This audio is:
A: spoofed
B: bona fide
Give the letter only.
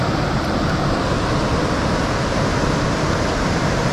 B